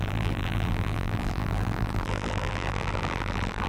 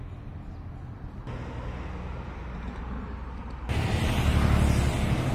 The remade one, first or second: first